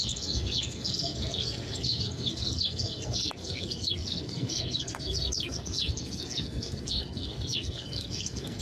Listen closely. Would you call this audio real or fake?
fake